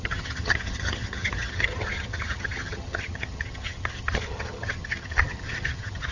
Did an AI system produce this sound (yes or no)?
yes